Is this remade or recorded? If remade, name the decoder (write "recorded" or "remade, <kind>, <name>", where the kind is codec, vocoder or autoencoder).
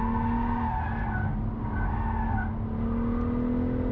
recorded